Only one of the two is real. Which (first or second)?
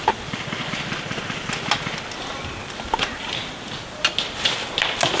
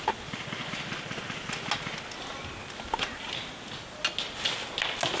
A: second